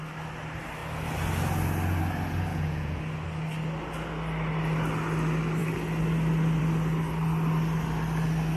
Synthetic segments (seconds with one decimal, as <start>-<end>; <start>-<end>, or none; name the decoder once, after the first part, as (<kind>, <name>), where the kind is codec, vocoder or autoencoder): 2.5-3.0 (vocoder, Vocos)